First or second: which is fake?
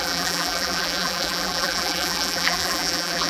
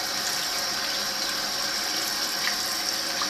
first